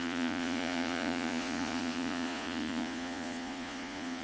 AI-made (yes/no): yes